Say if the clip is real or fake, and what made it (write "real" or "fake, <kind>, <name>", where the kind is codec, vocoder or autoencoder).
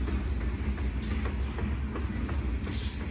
real